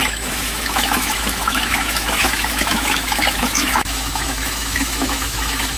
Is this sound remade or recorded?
remade